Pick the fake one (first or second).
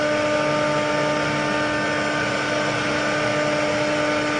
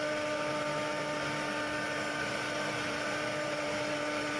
second